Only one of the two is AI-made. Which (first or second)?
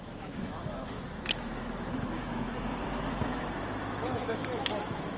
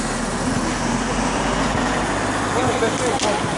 first